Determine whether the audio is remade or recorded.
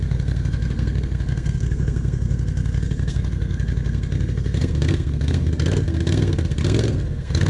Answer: remade